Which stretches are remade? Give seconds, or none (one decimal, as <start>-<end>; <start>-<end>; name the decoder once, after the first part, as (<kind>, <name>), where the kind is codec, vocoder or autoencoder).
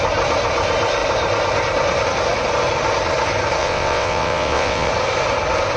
3.6-4.9 (vocoder, WaveNeXt)